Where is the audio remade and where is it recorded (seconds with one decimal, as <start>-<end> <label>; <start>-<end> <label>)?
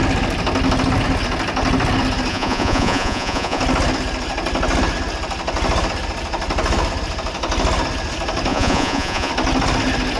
0.0-2.3 recorded; 2.3-3.6 remade; 3.6-8.5 recorded; 8.5-9.3 remade; 9.3-10.2 recorded